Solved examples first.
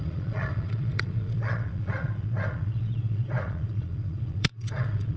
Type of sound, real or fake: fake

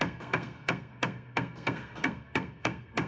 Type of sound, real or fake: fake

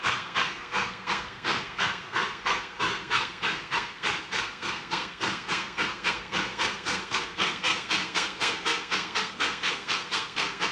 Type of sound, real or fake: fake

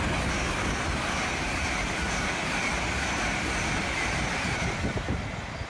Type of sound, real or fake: real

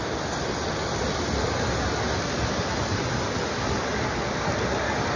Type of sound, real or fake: real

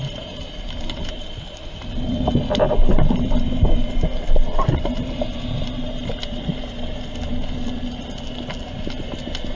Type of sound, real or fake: real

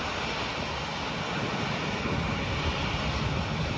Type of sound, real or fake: real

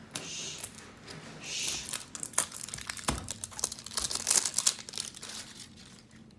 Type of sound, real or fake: real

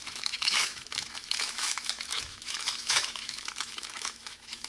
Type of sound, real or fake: fake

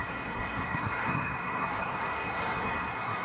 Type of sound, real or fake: fake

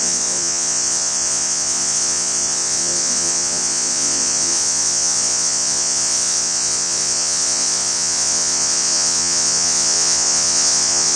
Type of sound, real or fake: fake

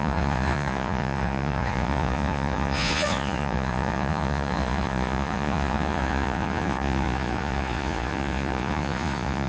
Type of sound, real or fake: fake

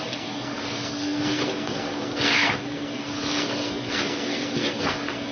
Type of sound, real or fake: fake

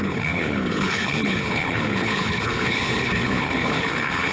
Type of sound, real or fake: fake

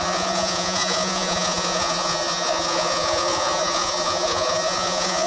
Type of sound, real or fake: fake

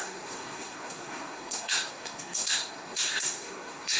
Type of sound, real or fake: fake